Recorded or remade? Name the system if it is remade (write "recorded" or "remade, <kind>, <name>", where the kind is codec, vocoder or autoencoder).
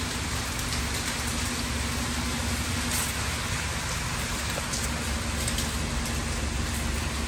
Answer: recorded